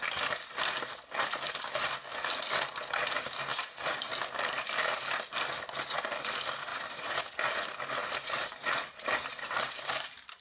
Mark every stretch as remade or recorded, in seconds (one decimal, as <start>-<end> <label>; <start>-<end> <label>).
0.0-3.5 recorded; 3.5-4.1 remade; 4.1-6.7 recorded; 6.7-7.2 remade; 7.2-8.0 recorded; 8.0-10.4 remade